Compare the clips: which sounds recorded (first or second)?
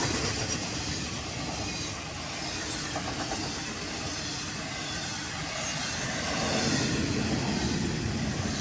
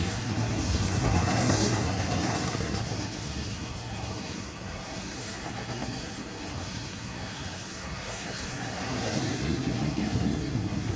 first